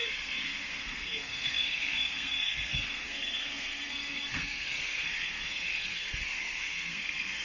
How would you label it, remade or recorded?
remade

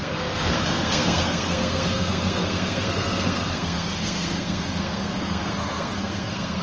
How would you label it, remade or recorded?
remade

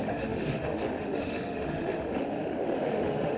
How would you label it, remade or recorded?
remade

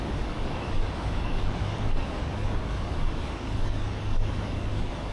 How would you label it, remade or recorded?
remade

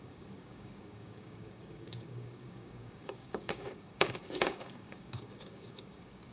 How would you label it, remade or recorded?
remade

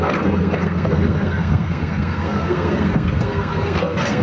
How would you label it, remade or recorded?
remade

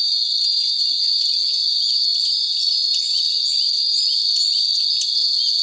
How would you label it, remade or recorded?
recorded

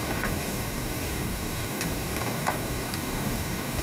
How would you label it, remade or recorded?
remade